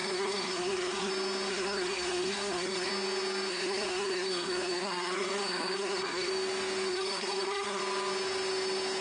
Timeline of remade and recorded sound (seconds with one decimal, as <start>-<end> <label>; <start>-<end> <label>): 0.0-1.1 remade; 1.1-1.5 recorded; 1.5-2.9 remade; 2.9-3.5 recorded; 3.5-6.3 remade; 6.3-6.9 recorded; 6.9-7.8 remade; 7.8-9.0 recorded